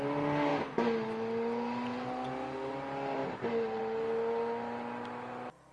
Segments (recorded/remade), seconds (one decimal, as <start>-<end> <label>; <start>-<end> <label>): 0.0-5.7 recorded